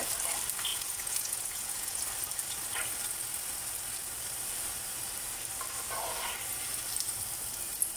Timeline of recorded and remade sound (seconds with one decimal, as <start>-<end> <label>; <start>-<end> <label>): 0.0-0.7 recorded; 0.7-2.0 remade; 2.0-8.0 recorded